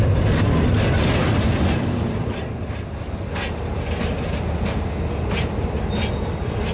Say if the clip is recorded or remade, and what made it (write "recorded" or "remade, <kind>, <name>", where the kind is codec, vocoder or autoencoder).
recorded